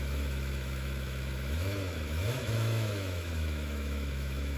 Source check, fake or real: fake